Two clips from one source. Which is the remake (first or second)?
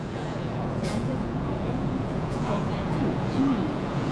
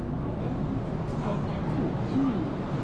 first